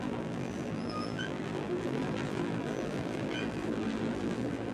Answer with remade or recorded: remade